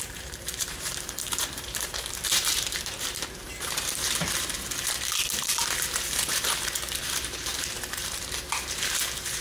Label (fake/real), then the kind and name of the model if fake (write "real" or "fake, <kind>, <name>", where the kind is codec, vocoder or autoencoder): fake, vocoder, BigVGAN v2